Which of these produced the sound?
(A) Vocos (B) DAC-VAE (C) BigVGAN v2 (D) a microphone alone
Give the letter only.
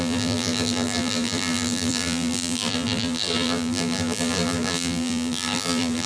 C